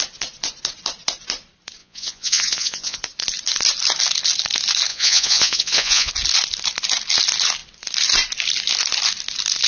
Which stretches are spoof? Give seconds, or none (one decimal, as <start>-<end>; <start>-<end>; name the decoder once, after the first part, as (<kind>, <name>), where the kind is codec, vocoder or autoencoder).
1.8-3.0 (vocoder, Vocos); 4.9-6.1